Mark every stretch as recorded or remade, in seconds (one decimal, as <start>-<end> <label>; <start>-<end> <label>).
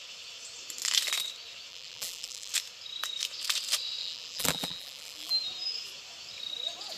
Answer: 0.0-1.7 recorded; 1.7-2.5 remade; 2.5-4.0 recorded; 4.0-5.3 remade; 5.3-7.0 recorded